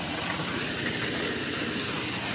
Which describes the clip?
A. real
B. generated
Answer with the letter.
A